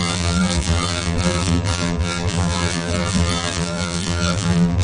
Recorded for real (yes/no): no